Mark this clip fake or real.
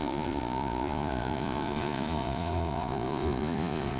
fake